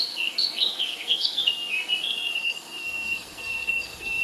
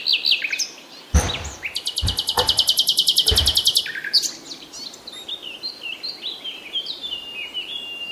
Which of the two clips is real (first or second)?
second